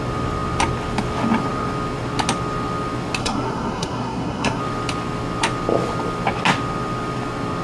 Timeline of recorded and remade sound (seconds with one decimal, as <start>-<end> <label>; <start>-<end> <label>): 0.0-3.2 recorded; 3.2-4.6 remade; 4.6-7.6 recorded